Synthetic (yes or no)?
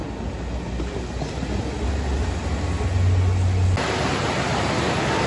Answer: no